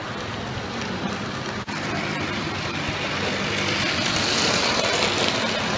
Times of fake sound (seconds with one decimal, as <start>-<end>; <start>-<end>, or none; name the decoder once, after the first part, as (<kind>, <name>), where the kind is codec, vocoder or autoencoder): 0.0-3.2 (vocoder, BigVGAN v2)